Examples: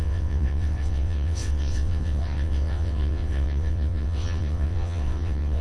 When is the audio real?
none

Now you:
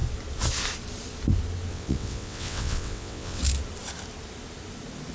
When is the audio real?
0.0-1.7; 3.4-5.1

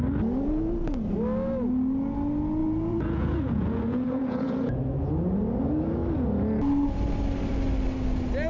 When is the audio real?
0.0-2.6; 5.0-8.5

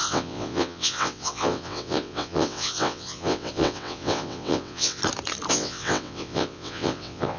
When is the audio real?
5.0-5.5

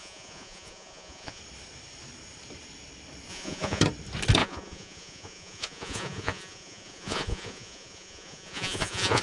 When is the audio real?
1.4-3.3; 3.8-4.4

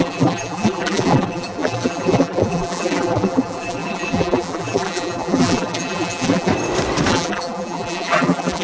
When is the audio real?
6.5-7.1

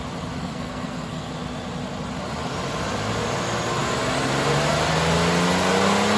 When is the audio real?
0.0-0.4; 1.3-6.2